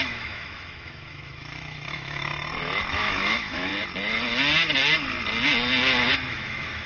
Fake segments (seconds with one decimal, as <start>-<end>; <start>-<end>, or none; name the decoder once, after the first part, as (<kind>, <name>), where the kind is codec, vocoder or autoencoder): 0.0-2.3 (autoencoder, DAC-VAE); 2.9-3.7; 6.3-6.9